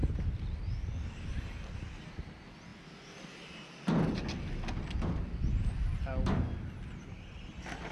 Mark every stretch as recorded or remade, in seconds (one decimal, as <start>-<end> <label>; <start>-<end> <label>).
0.0-7.9 recorded